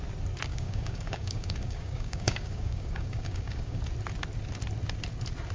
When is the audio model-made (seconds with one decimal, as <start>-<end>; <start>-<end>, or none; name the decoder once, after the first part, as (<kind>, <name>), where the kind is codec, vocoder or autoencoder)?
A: 0.5-3.8 (codec, DAC)